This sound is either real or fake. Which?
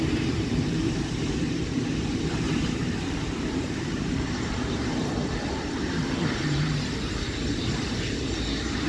fake